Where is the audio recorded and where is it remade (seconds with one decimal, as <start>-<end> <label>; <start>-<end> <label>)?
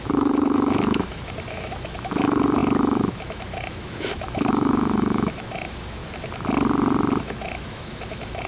0.0-6.0 remade; 6.0-7.2 recorded; 7.2-8.5 remade